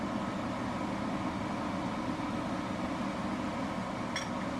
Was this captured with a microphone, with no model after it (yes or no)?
yes